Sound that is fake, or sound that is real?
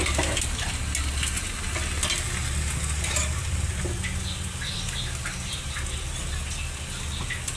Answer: real